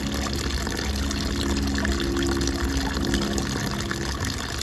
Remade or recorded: recorded